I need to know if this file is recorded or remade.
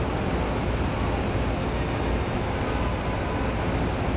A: recorded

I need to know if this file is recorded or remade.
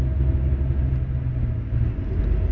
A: recorded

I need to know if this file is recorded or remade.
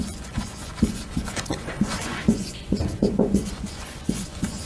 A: remade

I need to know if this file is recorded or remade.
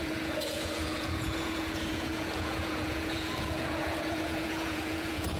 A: remade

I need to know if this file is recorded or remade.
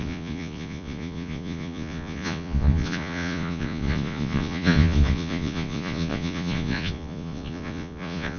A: remade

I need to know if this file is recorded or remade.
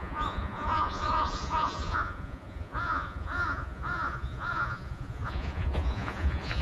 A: remade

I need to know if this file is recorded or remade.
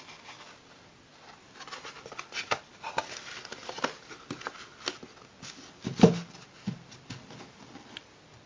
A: recorded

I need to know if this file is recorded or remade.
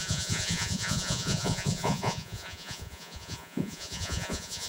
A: remade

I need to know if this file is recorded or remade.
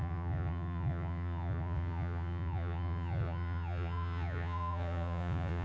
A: remade